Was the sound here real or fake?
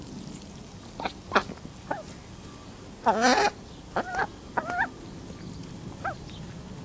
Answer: real